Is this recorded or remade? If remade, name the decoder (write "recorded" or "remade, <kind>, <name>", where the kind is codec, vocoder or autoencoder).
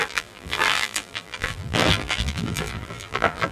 remade, vocoder, BigVGAN v2